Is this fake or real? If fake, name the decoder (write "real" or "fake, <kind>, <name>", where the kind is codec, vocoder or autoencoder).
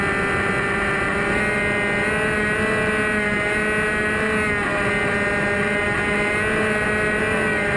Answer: real